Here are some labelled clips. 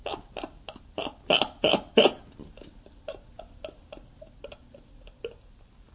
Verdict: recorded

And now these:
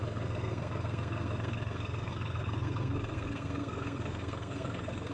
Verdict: remade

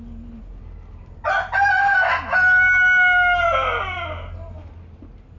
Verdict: recorded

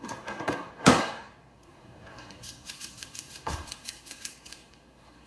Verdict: remade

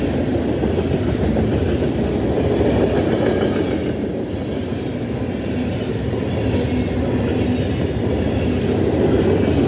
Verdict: recorded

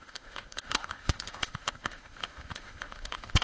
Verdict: remade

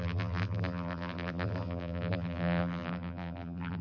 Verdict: remade